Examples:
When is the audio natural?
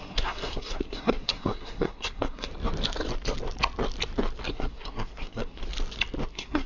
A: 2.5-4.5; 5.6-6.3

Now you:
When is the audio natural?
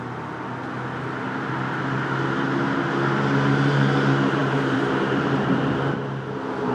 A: 0.0-4.4; 6.0-6.7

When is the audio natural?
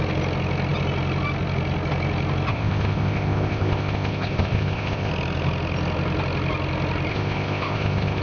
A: 0.0-2.5; 5.1-7.1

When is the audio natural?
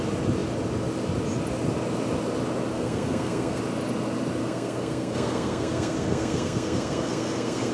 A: 0.0-2.7; 3.6-4.4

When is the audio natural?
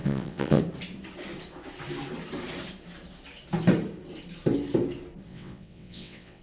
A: 0.6-5.3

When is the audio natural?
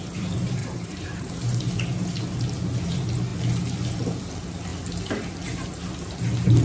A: 0.0-0.6; 1.3-6.6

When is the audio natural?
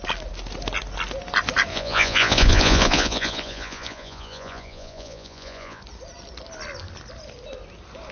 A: 0.0-1.7; 5.8-8.1